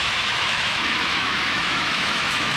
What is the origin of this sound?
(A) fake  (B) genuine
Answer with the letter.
A